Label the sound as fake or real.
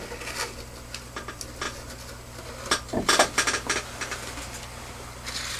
real